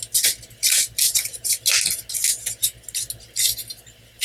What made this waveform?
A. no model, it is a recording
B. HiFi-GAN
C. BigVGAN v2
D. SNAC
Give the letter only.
A